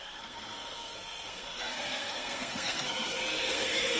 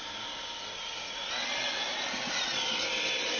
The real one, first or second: second